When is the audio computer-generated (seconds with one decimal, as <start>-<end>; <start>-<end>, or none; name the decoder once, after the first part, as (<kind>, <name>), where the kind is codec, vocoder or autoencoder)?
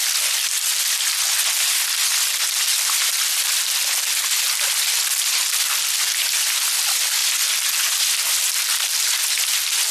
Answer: none